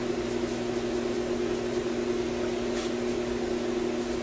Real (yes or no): yes